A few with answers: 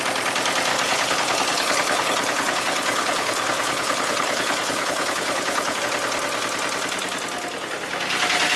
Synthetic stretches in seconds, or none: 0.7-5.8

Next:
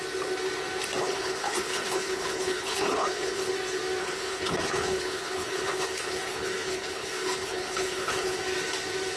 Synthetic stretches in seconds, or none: 1.0-3.5; 4.0-8.4

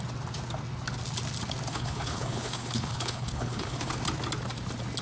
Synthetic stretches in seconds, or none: 1.7-3.9